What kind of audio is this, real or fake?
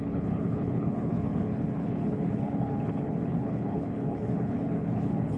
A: fake